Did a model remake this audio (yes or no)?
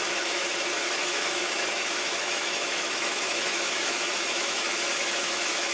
yes